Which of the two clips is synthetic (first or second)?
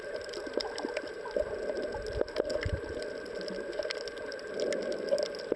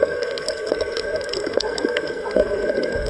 second